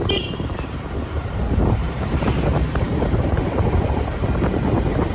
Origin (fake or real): fake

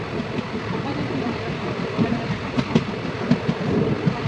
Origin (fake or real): real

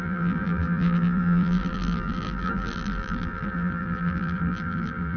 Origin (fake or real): fake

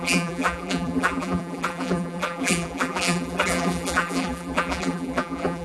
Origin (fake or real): fake